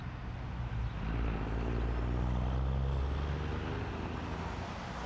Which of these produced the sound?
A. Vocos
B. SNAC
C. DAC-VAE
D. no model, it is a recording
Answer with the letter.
D